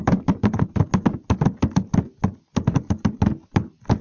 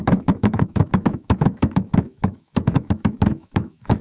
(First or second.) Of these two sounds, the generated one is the second